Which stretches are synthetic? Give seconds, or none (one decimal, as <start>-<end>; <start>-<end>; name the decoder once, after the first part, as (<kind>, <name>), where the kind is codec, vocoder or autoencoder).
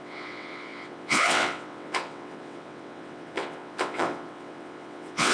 0.0-5.3 (vocoder, WaveNeXt)